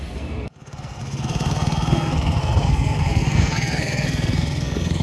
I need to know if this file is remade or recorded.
remade